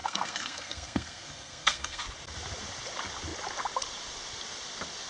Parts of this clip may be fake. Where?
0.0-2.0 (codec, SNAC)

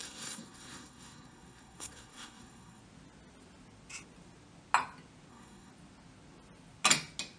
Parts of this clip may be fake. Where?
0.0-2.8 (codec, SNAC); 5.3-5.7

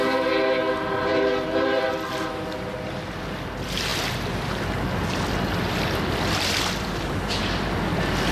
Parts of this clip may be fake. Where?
1.1-1.9 (vocoder, BigVGAN v2)

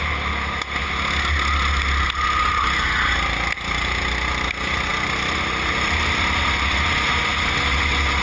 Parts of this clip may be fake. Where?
none

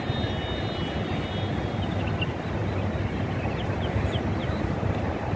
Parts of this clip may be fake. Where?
none